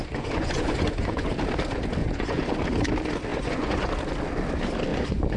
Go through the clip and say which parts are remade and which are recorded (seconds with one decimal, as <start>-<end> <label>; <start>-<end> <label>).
0.0-1.3 remade; 1.3-2.0 recorded; 2.0-2.5 remade; 2.5-3.3 recorded; 3.3-3.9 remade; 3.9-4.9 recorded; 4.9-5.4 remade